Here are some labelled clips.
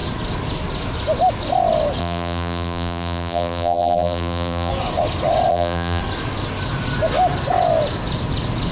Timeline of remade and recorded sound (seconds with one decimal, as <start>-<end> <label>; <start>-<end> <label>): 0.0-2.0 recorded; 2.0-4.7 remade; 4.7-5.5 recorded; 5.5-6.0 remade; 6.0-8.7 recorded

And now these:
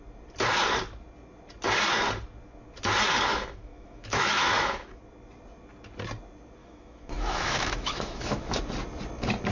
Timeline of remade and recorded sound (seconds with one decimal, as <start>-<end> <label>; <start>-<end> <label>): 0.0-3.3 recorded; 3.3-5.0 remade; 5.0-6.6 recorded; 6.6-8.6 remade; 8.6-9.5 recorded

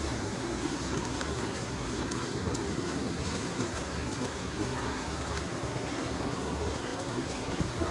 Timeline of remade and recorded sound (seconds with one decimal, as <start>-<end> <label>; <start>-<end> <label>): 0.0-7.9 remade